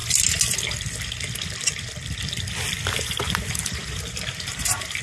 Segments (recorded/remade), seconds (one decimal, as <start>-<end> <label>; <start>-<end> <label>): 0.0-3.0 recorded; 3.0-5.0 remade